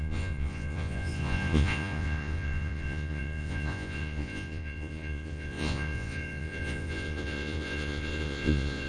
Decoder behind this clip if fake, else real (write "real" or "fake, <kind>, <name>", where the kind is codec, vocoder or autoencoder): fake, vocoder, Vocos